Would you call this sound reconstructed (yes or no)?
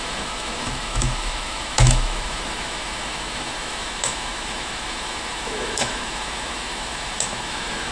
yes